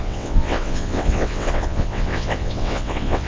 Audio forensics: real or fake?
fake